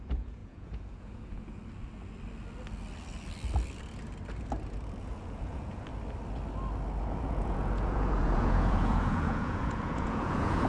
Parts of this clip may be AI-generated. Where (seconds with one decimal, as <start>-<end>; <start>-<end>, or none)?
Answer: 0.0-1.6; 5.0-5.9; 7.0-10.7